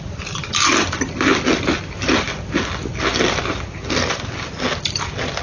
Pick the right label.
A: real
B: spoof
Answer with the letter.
A